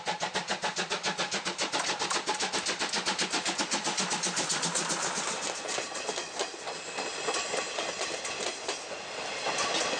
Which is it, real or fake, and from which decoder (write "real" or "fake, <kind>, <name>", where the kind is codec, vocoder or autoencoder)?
real